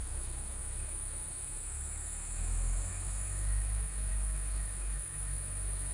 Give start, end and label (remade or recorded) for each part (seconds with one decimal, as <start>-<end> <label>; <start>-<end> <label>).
0.0-5.9 remade